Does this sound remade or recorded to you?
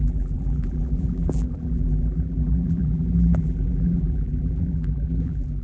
remade